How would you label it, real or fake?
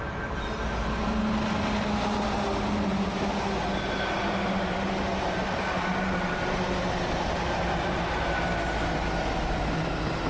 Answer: real